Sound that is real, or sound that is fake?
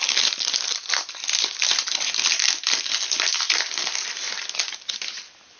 real